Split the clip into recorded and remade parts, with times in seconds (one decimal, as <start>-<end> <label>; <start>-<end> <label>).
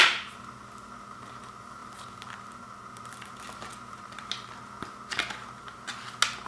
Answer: 0.0-6.5 recorded